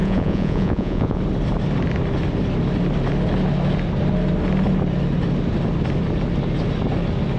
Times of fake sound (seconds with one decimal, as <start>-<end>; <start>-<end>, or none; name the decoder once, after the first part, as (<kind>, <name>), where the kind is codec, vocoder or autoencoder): 0.0-1.2 (vocoder, Vocos)